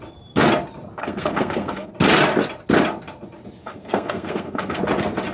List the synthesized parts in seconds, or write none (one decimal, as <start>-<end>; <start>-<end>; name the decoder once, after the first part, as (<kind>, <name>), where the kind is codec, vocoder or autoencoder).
1.0-1.9 (codec, SNAC); 3.6-4.8